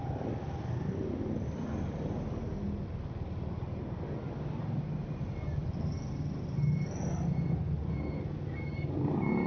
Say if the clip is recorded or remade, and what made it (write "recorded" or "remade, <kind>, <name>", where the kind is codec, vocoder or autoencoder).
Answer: recorded